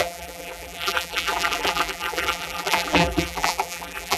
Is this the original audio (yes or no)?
no